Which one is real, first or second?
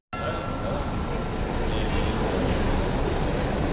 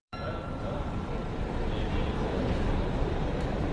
first